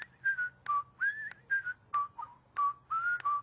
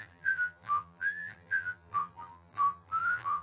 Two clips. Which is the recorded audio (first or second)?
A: first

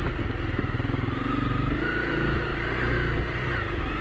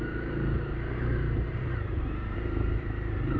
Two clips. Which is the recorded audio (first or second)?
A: first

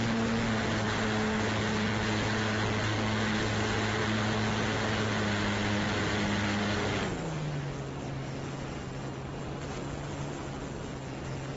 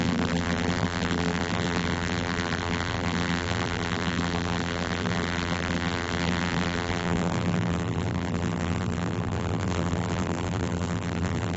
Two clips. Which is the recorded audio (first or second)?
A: first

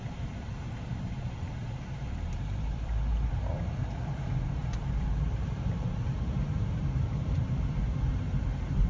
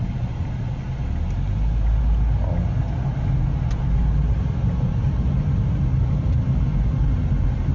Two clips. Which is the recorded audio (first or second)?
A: second